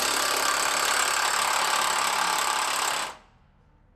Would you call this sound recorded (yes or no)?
yes